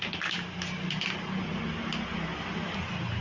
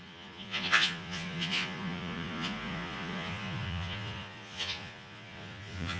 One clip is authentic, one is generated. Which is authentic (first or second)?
first